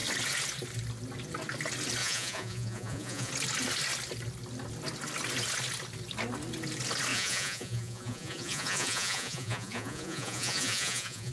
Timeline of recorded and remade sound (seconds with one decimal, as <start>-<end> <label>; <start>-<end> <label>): 0.0-2.0 recorded; 2.0-3.3 remade; 3.3-7.1 recorded; 7.1-11.3 remade